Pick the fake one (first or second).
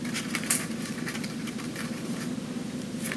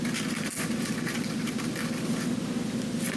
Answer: first